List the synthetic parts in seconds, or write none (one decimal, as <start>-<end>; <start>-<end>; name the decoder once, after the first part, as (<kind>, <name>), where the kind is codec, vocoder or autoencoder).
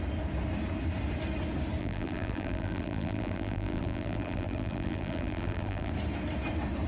1.8-5.9 (vocoder, BigVGAN v2)